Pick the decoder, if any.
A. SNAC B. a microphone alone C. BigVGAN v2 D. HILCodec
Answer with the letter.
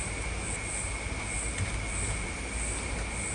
B